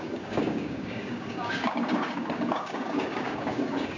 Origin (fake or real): fake